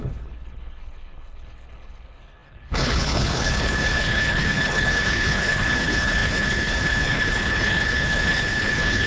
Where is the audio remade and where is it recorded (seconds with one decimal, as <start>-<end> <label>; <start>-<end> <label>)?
0.0-9.1 remade